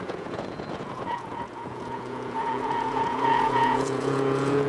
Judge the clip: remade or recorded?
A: remade